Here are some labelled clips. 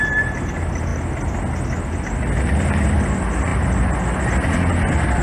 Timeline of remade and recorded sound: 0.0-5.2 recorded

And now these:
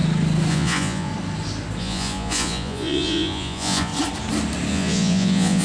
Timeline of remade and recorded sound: 0.0-0.5 recorded; 0.5-1.1 remade; 1.1-1.8 recorded; 1.8-3.9 remade; 3.9-4.7 recorded; 4.7-5.6 remade